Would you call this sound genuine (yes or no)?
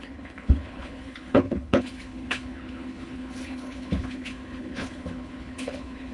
no